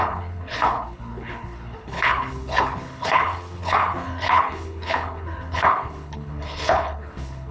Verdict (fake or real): fake